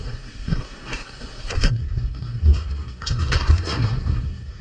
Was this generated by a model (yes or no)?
yes